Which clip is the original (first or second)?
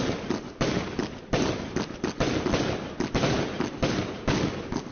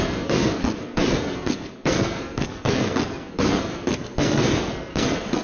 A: first